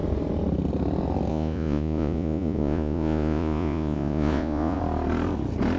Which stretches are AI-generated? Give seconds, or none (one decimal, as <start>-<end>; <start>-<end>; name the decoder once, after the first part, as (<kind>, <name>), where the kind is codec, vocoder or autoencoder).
1.3-4.8 (vocoder, Vocos)